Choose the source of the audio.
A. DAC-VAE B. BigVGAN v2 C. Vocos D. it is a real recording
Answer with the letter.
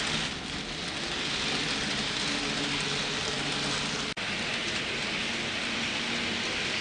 D